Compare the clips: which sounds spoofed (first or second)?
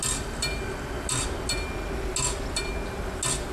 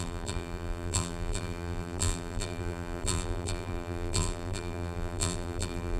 second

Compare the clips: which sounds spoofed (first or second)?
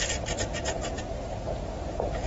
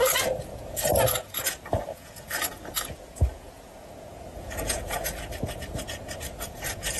second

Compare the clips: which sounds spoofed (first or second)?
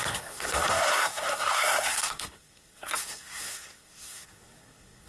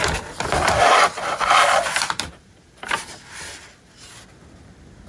first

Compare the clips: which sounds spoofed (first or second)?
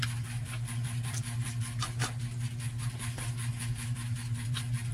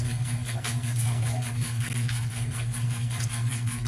second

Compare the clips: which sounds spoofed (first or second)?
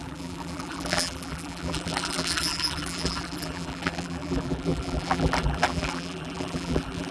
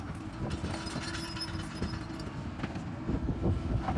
first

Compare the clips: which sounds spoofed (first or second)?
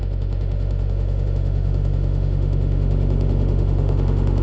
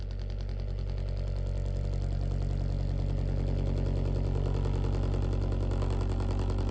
first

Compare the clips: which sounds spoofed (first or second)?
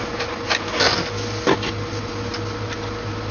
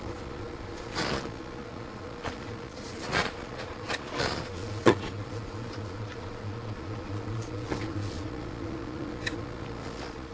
second